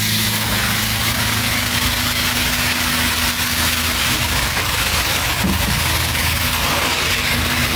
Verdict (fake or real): fake